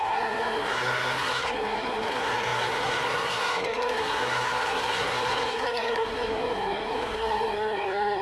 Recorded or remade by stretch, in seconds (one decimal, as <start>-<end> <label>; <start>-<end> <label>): 0.0-8.2 remade